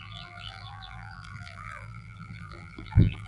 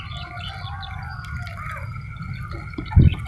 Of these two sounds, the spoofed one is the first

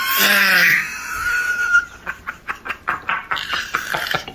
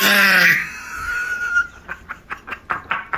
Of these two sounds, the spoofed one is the first